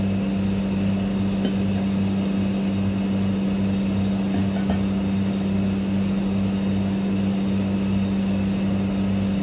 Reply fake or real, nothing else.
real